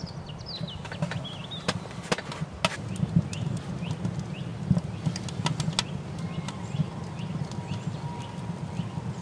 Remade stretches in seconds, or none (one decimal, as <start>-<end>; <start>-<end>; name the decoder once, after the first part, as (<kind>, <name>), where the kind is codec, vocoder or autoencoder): none